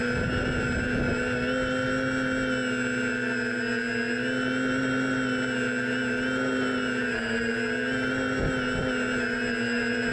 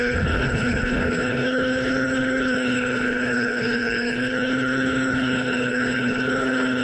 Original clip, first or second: first